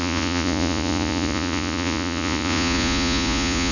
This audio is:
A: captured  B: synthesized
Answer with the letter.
B